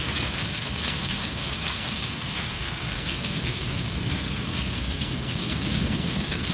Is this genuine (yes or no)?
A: no